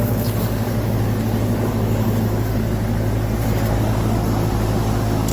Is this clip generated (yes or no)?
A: yes